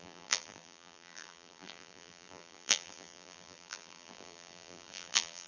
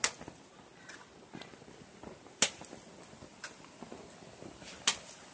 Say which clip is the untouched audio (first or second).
second